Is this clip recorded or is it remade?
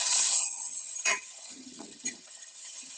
remade